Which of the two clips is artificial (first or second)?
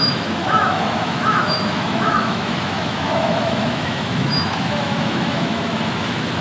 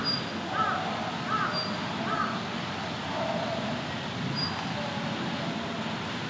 first